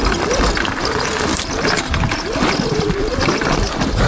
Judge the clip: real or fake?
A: real